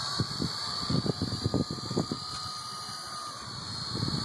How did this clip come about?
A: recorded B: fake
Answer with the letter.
A